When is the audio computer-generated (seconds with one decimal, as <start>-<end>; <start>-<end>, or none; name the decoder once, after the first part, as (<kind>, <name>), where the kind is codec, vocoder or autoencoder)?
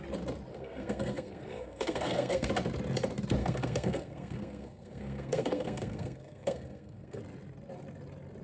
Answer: 0.5-2.5 (codec, SNAC); 3.4-7.2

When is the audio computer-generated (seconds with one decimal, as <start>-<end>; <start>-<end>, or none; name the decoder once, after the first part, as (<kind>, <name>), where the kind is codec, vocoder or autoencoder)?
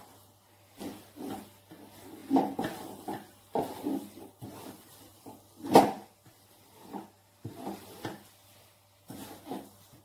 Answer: none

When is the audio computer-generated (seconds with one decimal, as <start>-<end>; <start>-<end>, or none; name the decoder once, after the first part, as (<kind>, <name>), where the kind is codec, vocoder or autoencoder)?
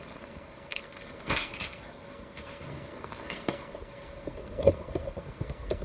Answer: 0.0-5.8 (codec, SNAC)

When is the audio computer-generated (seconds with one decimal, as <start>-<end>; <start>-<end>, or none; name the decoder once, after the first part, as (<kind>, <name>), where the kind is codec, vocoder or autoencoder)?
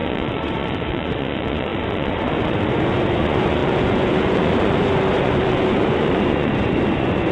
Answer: 0.0-7.3 (vocoder, Vocos)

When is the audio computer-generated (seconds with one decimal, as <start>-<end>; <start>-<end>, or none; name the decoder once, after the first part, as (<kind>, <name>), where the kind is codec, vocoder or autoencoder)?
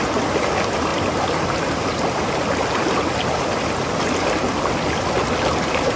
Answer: none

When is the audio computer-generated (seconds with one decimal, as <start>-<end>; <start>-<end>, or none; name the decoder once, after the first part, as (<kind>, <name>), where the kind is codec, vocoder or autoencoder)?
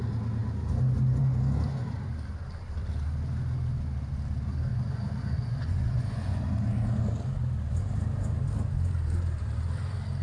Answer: 4.7-6.5 (vocoder, Vocos)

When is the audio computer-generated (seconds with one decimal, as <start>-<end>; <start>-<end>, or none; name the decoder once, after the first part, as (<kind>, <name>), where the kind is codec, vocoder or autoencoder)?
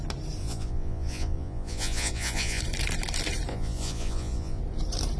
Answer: 0.4-2.6 (vocoder, Vocos); 3.5-4.6